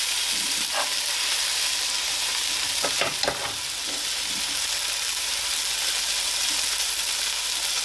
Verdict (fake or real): real